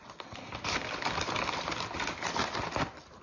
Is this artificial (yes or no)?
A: no